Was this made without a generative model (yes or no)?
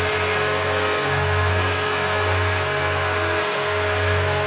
no